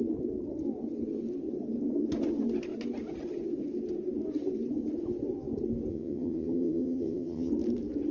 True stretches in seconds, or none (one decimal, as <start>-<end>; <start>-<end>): 0.0-5.9; 7.5-8.1

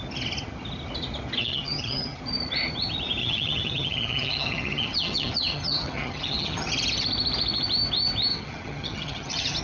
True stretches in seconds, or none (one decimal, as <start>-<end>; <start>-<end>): 0.0-1.4; 2.2-3.2; 6.7-8.3

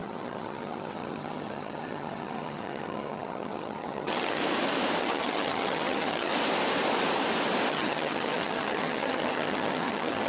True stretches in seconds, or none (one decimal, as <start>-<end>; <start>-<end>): 4.4-5.0; 6.3-7.7

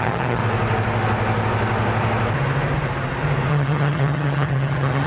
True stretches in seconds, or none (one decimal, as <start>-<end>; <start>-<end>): 0.4-3.5

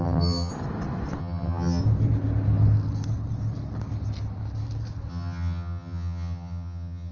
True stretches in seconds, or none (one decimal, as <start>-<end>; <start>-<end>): 0.5-1.2; 1.8-5.1

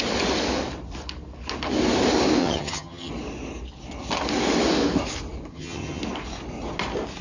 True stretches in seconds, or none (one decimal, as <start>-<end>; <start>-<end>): 0.0-2.4; 3.1-5.5; 6.0-7.2